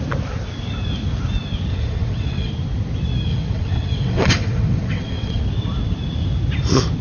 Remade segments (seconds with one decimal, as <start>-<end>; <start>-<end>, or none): 1.7-2.5; 3.3-5.4